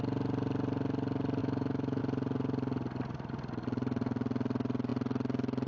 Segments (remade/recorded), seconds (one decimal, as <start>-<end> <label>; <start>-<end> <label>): 0.0-1.4 recorded; 1.4-2.0 remade; 2.0-5.7 recorded